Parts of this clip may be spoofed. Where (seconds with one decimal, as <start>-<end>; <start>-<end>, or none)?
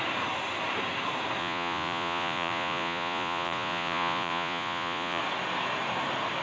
1.4-5.2